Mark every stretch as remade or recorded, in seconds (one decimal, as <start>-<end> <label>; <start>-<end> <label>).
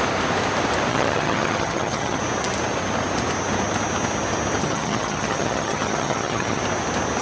0.0-0.9 recorded; 0.9-2.2 remade; 2.2-4.6 recorded; 4.6-6.6 remade; 6.6-7.2 recorded